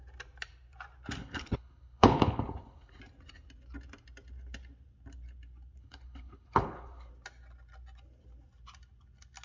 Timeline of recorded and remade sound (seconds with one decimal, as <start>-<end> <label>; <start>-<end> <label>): 0.0-1.2 recorded; 1.2-3.0 remade; 3.0-5.8 recorded; 5.8-7.1 remade; 7.1-9.4 recorded